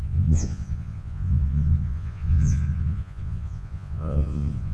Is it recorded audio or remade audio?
remade